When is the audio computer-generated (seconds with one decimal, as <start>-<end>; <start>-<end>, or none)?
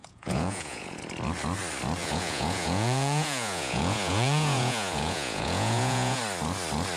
0.0-1.0; 2.0-6.2